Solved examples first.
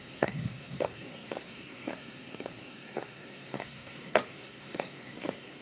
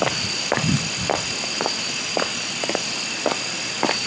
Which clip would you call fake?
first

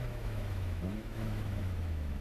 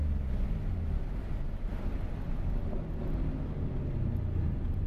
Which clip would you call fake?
first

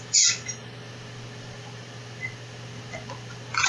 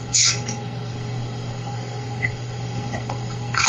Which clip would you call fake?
second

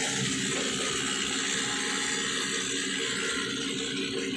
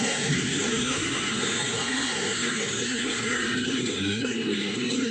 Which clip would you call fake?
second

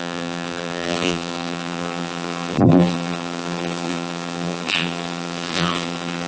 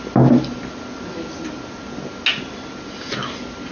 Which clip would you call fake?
first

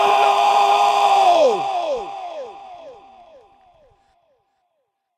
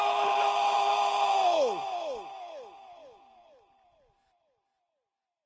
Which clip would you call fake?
first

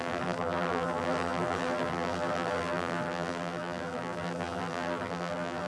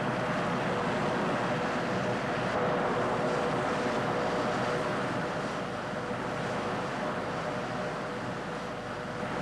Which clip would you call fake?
first